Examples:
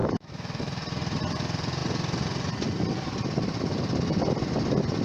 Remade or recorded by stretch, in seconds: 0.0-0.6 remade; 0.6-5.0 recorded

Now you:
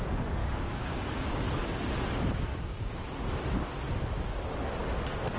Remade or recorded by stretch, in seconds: 0.0-0.4 recorded; 0.4-1.4 remade; 1.4-2.5 recorded; 2.5-3.0 remade; 3.0-5.4 recorded

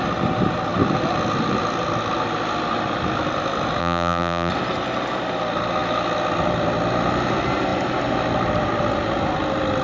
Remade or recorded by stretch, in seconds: 0.0-3.8 recorded; 3.8-4.5 remade; 4.5-9.8 recorded

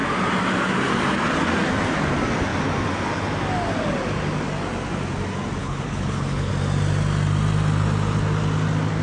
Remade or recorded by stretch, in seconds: 0.0-5.6 recorded; 5.6-6.5 remade; 6.5-9.0 recorded

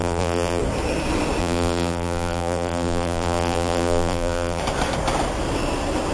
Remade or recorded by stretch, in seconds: 0.0-0.6 remade; 0.6-1.4 recorded; 1.4-4.6 remade; 4.6-6.1 recorded

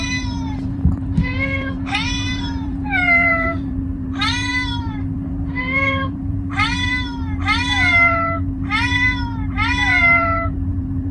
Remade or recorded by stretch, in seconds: 0.0-11.1 remade